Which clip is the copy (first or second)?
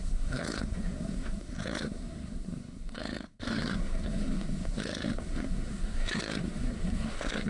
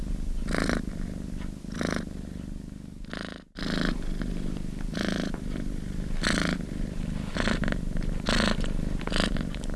first